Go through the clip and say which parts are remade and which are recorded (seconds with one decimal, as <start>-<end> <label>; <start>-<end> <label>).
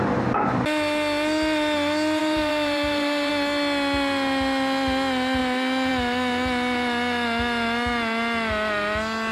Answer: 0.0-2.2 recorded; 2.2-3.3 remade; 3.3-9.3 recorded